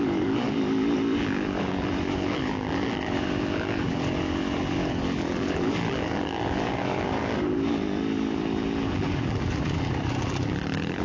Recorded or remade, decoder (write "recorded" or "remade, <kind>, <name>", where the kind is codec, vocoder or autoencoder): remade, vocoder, BigVGAN v2